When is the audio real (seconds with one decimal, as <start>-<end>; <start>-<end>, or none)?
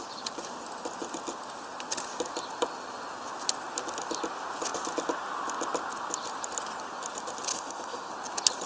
0.0-7.5; 8.1-8.7